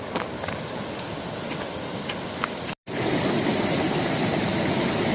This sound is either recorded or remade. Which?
recorded